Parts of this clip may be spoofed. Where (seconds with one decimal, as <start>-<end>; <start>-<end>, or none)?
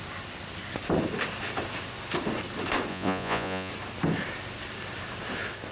2.9-3.7